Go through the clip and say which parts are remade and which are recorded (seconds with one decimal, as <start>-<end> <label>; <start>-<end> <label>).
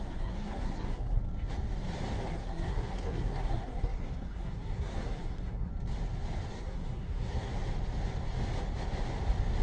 0.0-1.2 remade; 1.2-2.3 recorded; 2.3-5.7 remade; 5.7-6.5 recorded; 6.5-7.5 remade; 7.5-9.6 recorded